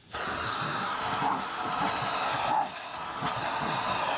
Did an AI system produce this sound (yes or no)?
no